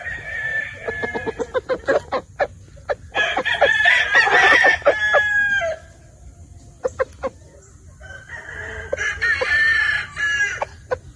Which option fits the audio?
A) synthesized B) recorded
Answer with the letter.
B